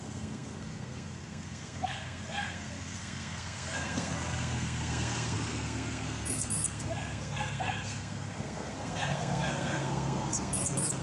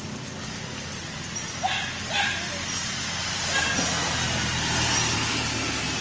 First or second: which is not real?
first